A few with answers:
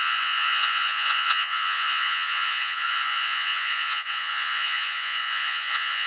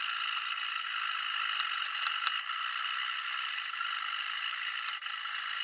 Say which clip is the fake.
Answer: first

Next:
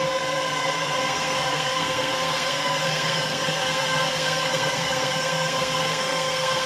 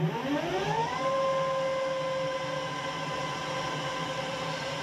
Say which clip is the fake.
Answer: first